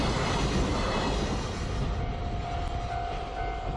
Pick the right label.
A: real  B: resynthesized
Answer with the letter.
A